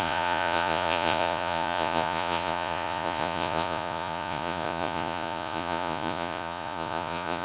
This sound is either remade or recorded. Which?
remade